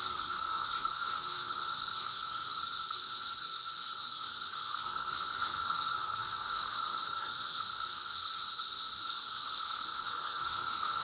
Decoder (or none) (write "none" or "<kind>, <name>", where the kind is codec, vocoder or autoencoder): codec, SNAC